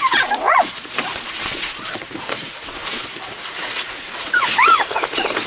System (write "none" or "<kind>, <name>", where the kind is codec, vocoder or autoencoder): vocoder, Vocos